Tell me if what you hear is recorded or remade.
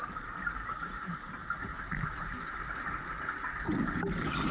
recorded